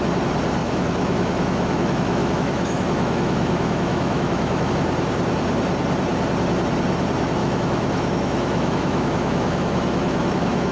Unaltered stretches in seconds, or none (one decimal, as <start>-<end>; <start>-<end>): 0.0-0.6; 4.7-7.4